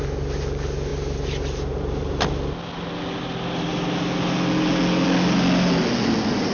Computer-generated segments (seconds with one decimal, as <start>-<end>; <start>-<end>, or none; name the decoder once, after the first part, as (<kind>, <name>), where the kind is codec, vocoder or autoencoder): none